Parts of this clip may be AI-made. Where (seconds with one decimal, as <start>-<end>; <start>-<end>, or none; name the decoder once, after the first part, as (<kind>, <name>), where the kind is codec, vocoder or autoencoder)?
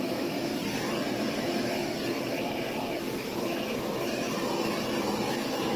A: 0.0-0.5 (autoencoder, DAC-VAE); 1.3-1.9; 3.2-3.9; 5.3-5.8